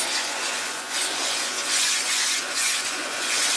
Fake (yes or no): yes